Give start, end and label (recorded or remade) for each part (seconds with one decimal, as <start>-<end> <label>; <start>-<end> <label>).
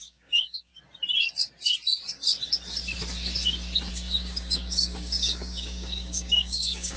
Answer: 0.0-0.7 remade; 0.7-3.9 recorded; 3.9-7.0 remade